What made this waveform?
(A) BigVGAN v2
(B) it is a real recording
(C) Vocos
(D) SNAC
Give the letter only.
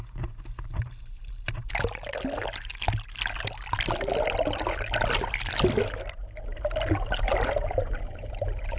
B